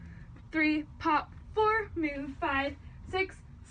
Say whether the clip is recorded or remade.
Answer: recorded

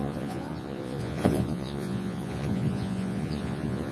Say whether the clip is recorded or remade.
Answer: remade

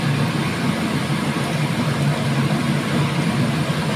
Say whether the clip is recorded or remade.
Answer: recorded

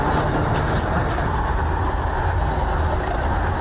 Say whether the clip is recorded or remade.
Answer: recorded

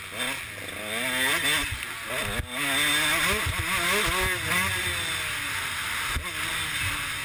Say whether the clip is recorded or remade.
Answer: recorded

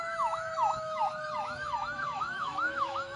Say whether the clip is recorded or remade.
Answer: remade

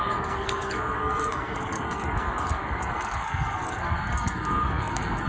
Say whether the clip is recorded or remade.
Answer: remade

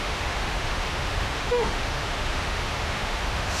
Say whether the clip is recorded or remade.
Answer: remade